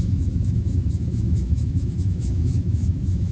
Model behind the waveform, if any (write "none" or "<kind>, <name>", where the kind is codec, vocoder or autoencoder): autoencoder, DAC-VAE